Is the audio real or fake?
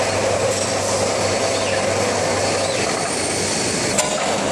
real